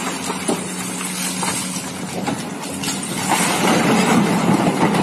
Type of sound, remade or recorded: recorded